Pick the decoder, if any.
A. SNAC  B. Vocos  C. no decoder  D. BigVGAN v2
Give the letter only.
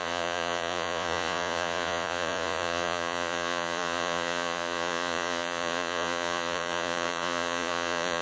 B